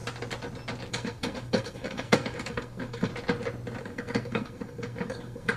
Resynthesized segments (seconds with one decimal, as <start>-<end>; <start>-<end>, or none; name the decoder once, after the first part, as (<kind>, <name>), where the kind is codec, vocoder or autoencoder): 0.9-3.1 (codec, SNAC); 3.8-5.6